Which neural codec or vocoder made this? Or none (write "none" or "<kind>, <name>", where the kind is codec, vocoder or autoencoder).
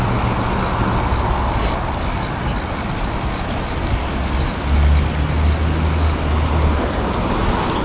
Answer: none